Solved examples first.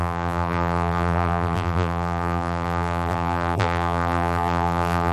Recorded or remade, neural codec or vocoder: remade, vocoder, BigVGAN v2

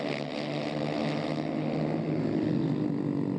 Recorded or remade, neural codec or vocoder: recorded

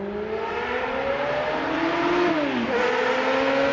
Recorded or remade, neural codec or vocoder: recorded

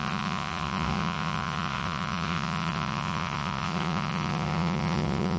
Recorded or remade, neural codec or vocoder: remade, vocoder, Vocos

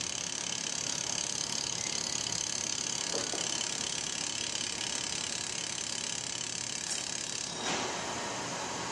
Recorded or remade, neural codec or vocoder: recorded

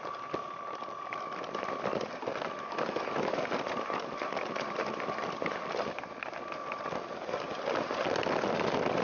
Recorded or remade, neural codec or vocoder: recorded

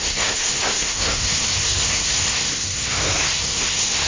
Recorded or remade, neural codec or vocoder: remade, codec, SNAC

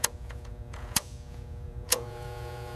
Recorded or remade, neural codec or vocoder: remade, vocoder, Vocos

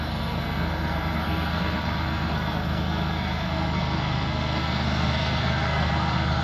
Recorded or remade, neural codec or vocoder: remade, codec, SNAC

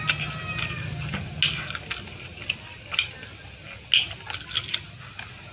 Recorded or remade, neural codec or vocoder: recorded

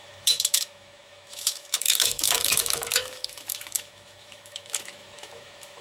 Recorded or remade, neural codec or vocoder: remade, autoencoder, DAC-VAE